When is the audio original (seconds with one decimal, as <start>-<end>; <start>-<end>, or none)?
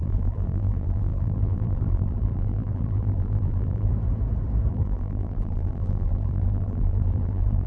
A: 3.9-4.7